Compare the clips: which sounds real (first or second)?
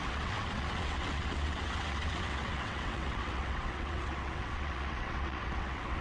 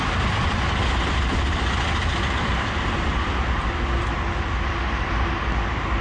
second